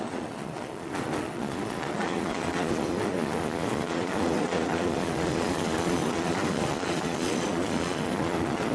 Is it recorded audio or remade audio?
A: remade